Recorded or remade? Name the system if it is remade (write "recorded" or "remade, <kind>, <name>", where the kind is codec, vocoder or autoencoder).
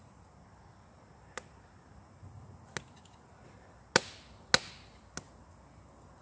recorded